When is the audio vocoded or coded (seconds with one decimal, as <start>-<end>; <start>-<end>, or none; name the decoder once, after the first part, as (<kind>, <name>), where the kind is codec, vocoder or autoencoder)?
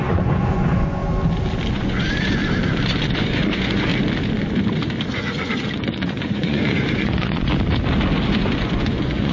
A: 0.0-1.0 (vocoder, Vocos); 1.7-2.4; 3.1-3.9; 5.1-7.5; 8.3-9.3